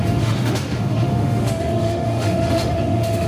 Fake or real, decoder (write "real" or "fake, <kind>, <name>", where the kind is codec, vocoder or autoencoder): fake, autoencoder, DAC-VAE